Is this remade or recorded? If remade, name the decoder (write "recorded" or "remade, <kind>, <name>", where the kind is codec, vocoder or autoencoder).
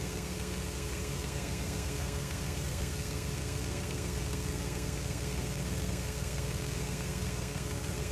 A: remade, codec, SNAC